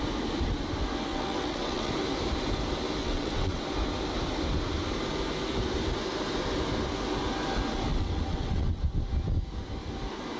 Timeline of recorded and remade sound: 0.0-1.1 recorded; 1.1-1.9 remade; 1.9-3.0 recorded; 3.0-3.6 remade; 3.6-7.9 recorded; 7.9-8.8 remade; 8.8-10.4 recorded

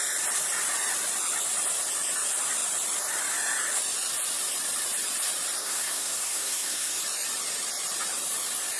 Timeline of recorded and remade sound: 0.0-5.6 recorded; 5.6-7.0 remade; 7.0-8.8 recorded

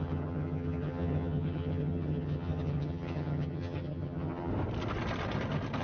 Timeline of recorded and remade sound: 0.0-4.5 remade; 4.5-5.8 recorded

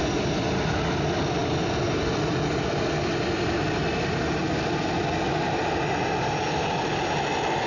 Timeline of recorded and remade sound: 0.0-7.7 recorded

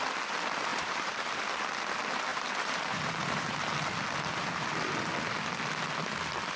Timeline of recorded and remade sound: 0.0-0.7 recorded; 0.7-1.4 remade; 1.4-2.3 recorded; 2.3-3.5 remade; 3.5-6.6 recorded

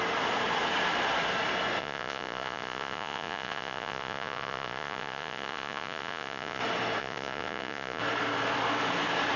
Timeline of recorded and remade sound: 0.0-1.8 recorded; 1.8-6.6 remade; 6.6-7.0 recorded; 7.0-8.0 remade; 8.0-9.4 recorded

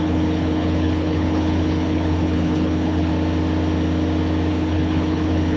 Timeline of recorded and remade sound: 0.0-3.1 remade; 3.1-4.5 recorded; 4.5-5.6 remade